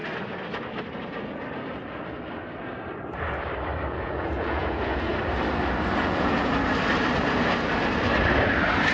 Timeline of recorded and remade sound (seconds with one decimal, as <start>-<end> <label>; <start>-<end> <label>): 0.0-3.9 recorded; 3.9-5.1 remade; 5.1-6.0 recorded; 6.0-6.5 remade; 6.5-8.9 recorded